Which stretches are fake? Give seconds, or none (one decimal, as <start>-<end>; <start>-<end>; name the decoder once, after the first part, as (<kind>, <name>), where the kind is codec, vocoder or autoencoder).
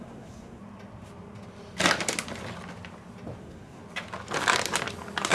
0.0-0.6 (codec, SNAC); 3.4-3.8